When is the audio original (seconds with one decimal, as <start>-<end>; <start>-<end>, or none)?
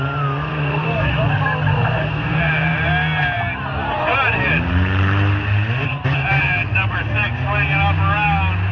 0.0-0.5; 1.1-1.7; 2.4-8.7